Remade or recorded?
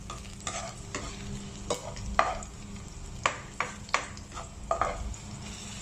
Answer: recorded